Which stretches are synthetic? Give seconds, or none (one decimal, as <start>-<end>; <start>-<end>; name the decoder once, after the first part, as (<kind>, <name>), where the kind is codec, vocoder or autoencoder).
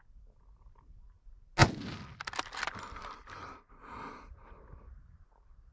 none